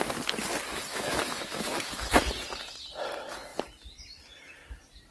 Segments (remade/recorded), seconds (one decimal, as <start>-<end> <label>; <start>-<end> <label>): 0.0-0.9 recorded; 0.9-2.1 remade; 2.1-5.1 recorded